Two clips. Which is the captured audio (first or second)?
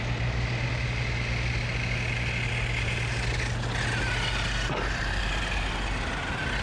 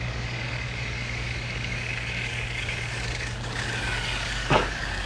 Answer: first